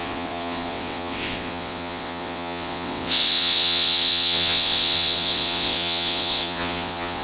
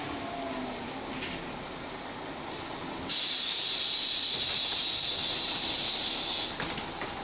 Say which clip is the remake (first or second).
first